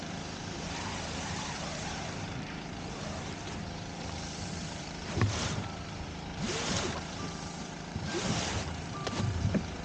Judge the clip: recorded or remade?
remade